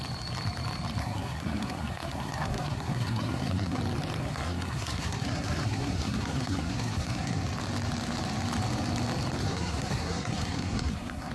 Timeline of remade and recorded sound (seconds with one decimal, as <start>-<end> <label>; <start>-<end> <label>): 0.0-1.0 recorded; 1.0-3.8 remade; 3.8-4.2 recorded; 4.2-7.4 remade; 7.4-9.4 recorded; 9.4-11.3 remade